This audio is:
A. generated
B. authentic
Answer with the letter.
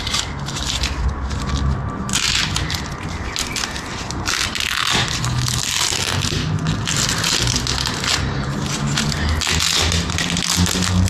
B